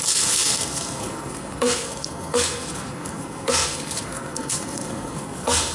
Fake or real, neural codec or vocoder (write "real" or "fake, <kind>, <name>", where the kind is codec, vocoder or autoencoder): fake, codec, SNAC